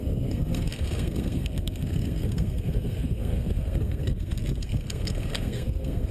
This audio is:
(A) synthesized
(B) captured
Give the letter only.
A